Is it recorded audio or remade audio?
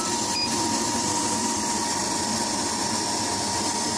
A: recorded